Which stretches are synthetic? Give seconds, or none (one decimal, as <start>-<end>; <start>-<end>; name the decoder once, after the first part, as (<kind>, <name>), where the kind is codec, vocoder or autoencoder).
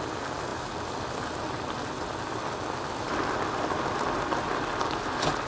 none